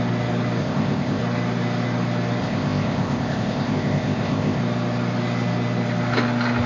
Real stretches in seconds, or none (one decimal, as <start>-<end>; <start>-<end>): 0.0-0.6; 1.2-2.4; 4.6-6.7

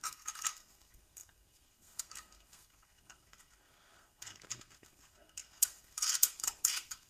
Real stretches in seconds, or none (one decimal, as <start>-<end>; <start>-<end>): none